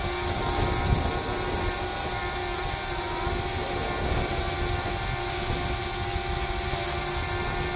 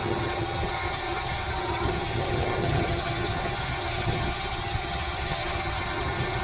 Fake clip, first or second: second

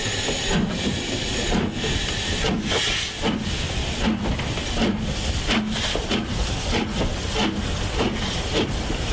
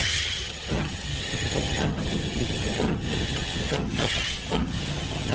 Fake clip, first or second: second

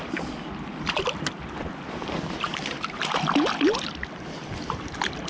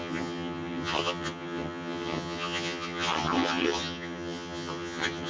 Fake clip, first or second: second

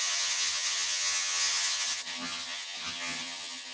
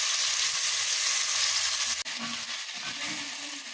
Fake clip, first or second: first